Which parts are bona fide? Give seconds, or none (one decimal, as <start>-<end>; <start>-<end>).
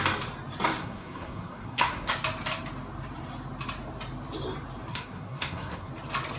0.0-0.8; 2.1-4.9; 5.9-6.4